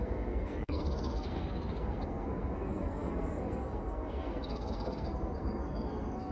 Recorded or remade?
remade